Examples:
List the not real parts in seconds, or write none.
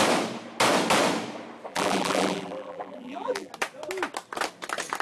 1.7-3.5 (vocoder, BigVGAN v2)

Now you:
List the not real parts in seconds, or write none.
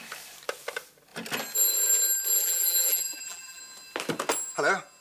2.4-3.6 (vocoder, BigVGAN v2)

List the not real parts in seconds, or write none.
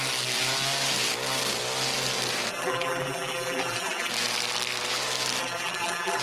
2.5-4.1 (vocoder, BigVGAN v2); 5.4-6.2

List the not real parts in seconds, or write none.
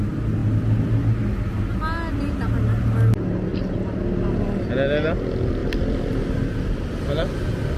5.6-6.3 (vocoder, BigVGAN v2)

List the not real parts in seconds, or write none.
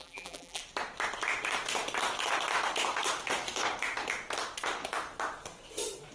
0.0-0.6 (vocoder, BigVGAN v2)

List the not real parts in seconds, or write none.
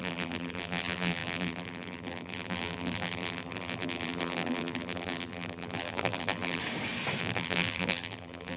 0.0-6.6 (vocoder, BigVGAN v2); 7.2-8.6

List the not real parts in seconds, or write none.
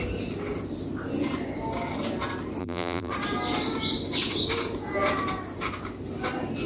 2.6-3.1 (vocoder, BigVGAN v2)